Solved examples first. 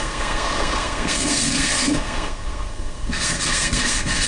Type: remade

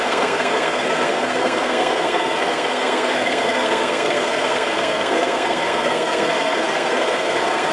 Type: remade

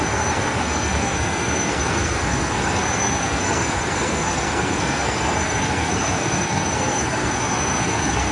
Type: remade